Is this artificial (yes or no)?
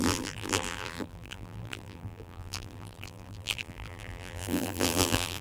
yes